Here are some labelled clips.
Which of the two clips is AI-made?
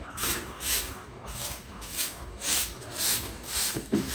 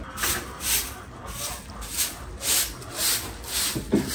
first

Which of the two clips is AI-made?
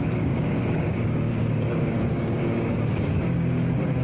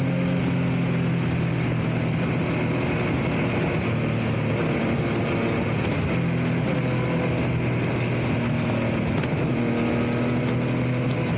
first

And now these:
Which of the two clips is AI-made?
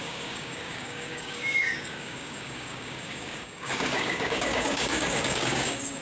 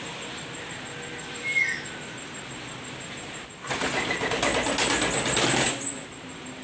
first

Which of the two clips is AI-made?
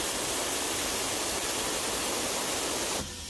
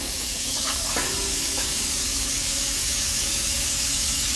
second